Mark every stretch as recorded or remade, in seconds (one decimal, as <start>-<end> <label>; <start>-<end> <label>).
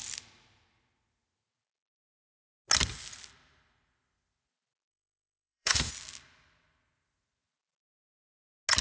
0.0-4.9 recorded; 4.9-5.9 remade; 5.9-8.8 recorded